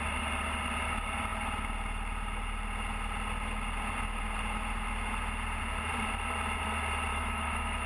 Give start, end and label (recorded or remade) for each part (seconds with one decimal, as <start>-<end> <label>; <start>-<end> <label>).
0.0-7.1 recorded; 7.1-7.9 remade